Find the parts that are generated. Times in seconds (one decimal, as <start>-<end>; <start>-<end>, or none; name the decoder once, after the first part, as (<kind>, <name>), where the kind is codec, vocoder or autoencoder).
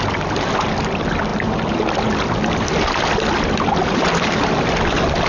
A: none